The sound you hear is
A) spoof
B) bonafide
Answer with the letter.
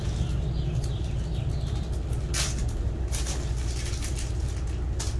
B